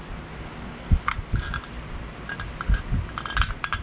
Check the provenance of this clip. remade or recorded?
recorded